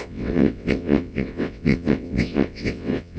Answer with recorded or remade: remade